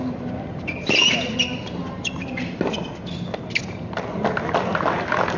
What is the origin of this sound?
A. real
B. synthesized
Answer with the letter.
A